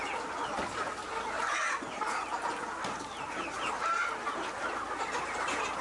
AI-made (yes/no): no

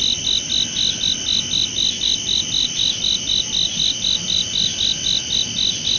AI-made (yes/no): no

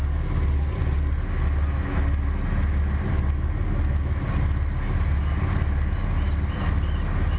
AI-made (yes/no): no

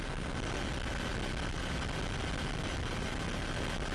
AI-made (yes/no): no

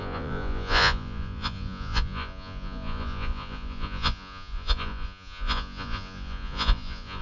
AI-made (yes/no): yes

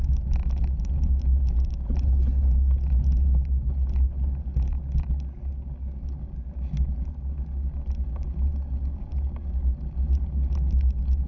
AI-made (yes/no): no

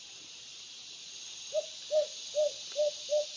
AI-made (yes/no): no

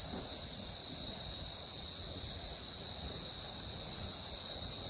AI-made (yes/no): yes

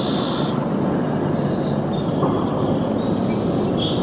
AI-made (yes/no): no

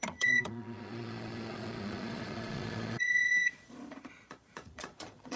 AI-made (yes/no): yes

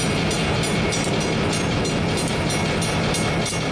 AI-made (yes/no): no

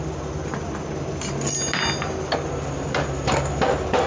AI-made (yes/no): no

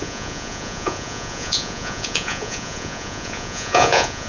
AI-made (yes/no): yes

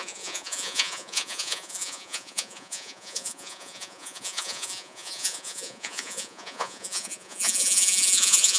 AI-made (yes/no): yes